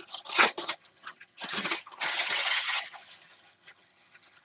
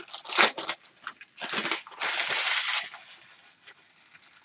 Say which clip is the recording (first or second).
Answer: second